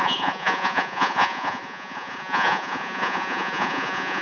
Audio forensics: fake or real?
fake